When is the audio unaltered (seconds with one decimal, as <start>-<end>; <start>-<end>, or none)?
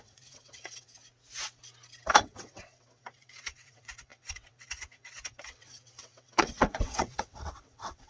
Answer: 1.0-2.1